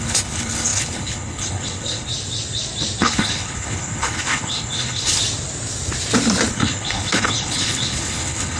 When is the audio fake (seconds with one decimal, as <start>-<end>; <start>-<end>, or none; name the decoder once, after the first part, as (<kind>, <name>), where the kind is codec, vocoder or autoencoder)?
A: 0.0-2.1 (codec, HILCodec); 3.0-5.2; 6.5-8.6